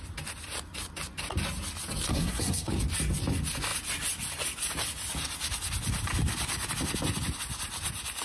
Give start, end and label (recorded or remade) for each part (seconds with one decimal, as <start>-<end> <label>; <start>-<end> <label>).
0.0-2.1 recorded; 2.1-2.7 remade; 2.7-8.2 recorded